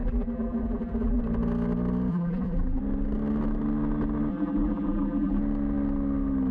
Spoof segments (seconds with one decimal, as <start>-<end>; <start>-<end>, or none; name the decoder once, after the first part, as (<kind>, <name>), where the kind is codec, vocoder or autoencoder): 0.0-1.2 (vocoder, BigVGAN v2); 2.1-2.8; 4.3-5.4